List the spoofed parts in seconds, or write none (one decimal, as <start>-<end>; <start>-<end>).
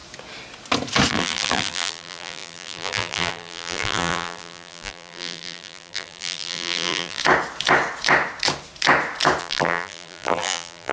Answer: 1.1-7.2; 9.4-10.9